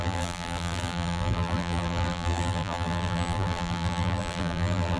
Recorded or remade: remade